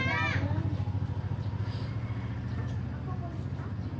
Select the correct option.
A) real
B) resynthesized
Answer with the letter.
A